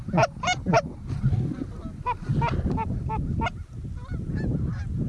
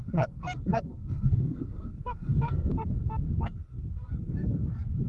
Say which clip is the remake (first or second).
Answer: second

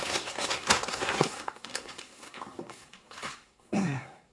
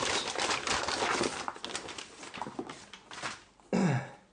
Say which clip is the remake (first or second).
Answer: first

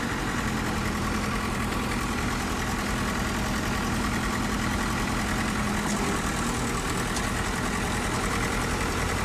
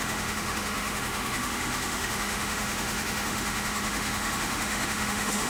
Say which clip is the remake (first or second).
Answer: second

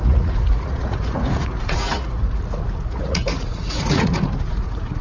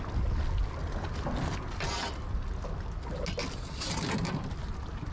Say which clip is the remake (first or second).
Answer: first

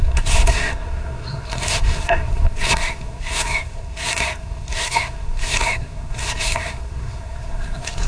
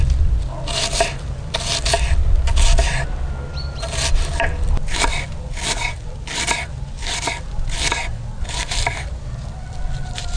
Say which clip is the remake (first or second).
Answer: first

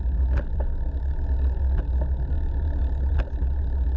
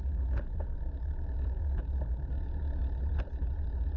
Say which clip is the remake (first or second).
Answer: second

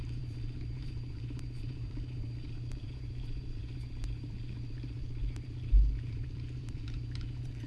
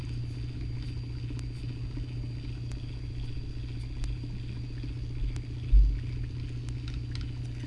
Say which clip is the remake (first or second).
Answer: first